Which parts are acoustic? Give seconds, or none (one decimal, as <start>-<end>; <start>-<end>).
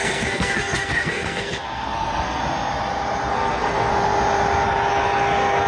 2.4-3.3; 3.9-4.9